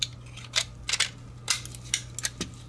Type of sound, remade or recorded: recorded